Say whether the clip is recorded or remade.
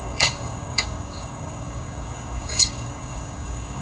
remade